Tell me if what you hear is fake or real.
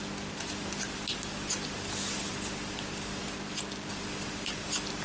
real